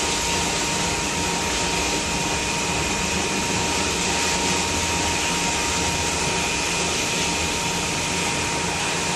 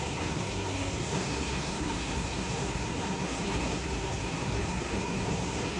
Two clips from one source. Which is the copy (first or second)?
second